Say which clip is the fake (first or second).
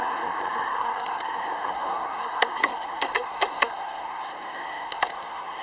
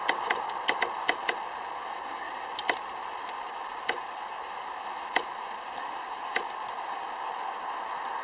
first